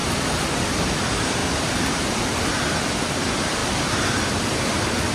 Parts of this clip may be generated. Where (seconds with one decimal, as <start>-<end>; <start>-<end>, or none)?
0.0-5.1